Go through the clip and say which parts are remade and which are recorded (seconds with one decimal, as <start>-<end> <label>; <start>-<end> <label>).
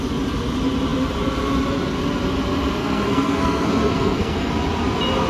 0.0-2.8 recorded; 2.8-4.5 remade; 4.5-5.3 recorded